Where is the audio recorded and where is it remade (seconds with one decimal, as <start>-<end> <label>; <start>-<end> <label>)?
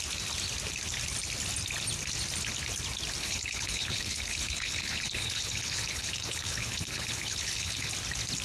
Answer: 0.0-3.2 recorded; 3.2-7.9 remade; 7.9-8.4 recorded